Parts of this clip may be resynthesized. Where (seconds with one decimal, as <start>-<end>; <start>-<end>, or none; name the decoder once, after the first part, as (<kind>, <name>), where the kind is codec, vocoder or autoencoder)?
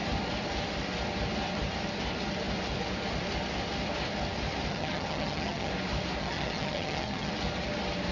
4.7-5.7 (vocoder, HiFi-GAN); 6.2-7.3